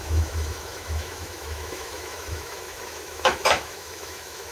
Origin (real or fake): fake